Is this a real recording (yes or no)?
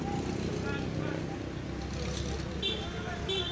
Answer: yes